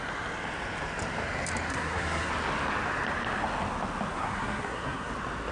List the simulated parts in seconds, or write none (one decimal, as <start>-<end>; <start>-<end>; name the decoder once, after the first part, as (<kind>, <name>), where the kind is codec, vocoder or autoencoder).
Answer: 1.7-2.3 (codec, SNAC); 4.1-5.1